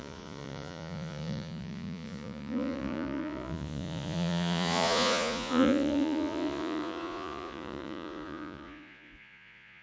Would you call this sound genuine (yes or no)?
no